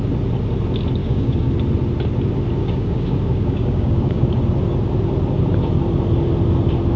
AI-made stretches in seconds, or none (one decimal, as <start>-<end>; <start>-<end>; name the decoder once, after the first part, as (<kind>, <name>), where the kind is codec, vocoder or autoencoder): 1.0-1.5 (codec, DAC); 2.6-4.3

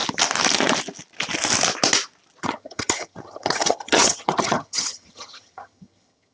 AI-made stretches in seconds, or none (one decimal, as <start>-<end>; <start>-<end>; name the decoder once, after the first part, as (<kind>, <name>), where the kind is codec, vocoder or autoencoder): 2.4-6.3 (vocoder, HiFi-GAN)

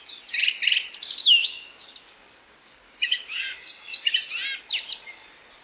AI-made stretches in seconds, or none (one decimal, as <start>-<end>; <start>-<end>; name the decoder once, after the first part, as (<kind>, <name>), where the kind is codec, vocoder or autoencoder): 1.2-4.1 (codec, DAC)